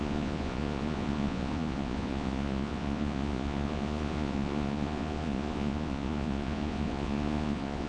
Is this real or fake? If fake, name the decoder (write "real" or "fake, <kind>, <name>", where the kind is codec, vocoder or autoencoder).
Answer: fake, vocoder, Vocos